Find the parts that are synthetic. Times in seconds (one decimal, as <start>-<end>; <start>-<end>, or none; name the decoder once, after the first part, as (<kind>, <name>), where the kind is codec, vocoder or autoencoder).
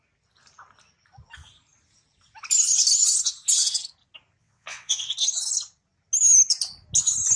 4.4-5.1 (vocoder, WaveNeXt)